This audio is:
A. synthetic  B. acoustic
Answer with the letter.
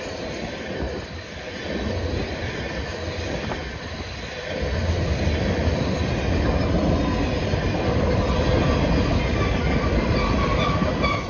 B